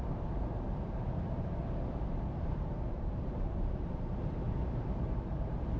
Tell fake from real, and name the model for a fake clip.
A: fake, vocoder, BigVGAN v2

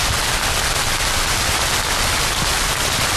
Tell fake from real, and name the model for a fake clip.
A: real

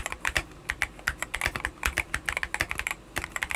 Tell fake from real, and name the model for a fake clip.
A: real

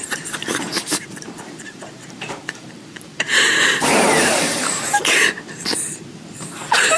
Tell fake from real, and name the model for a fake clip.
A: fake, vocoder, BigVGAN v2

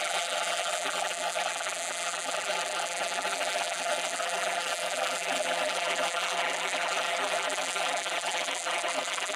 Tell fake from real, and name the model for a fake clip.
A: fake, vocoder, BigVGAN v2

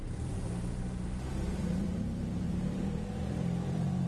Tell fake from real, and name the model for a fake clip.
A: fake, vocoder, BigVGAN v2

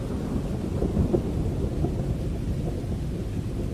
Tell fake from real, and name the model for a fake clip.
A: real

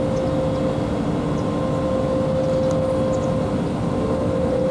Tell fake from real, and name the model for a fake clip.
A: real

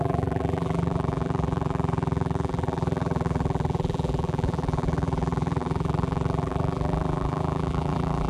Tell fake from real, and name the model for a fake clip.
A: fake, vocoder, BigVGAN v2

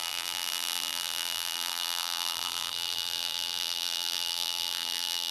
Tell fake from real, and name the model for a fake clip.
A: fake, vocoder, BigVGAN v2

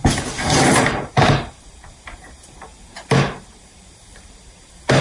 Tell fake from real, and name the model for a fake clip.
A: fake, vocoder, BigVGAN v2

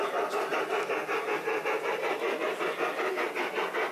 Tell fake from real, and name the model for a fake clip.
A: real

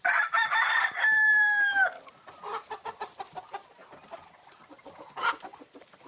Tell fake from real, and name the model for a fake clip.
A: fake, vocoder, BigVGAN v2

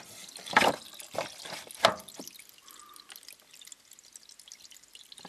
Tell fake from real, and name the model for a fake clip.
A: real